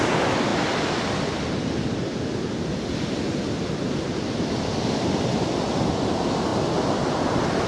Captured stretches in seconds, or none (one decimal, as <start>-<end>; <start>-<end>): 0.0-7.7